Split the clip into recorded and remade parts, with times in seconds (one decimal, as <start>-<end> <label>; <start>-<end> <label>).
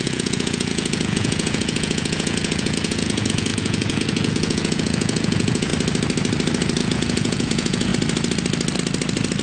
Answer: 0.0-5.7 remade; 5.7-6.8 recorded; 6.8-7.9 remade; 7.9-9.4 recorded